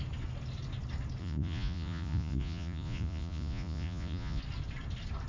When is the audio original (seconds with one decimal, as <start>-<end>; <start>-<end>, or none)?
0.0-1.2; 4.4-5.3